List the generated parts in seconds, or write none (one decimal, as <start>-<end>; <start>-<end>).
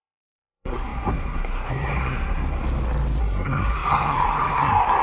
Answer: 0.0-2.6; 3.2-5.0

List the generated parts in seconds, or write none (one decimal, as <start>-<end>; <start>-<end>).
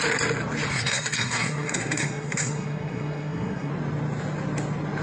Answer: 0.7-3.7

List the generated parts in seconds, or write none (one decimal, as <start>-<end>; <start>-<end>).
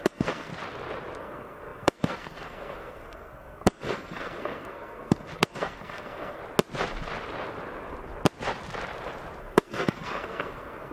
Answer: 0.0-0.5; 1.2-6.4; 9.4-10.9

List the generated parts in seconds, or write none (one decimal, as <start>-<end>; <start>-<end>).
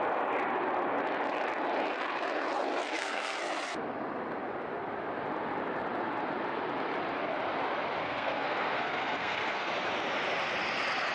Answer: 2.9-3.4; 8.0-9.7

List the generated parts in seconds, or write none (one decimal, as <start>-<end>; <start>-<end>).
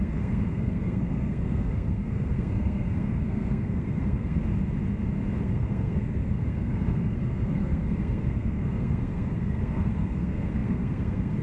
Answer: 0.0-4.4; 5.4-11.4